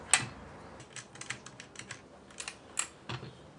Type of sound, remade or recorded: recorded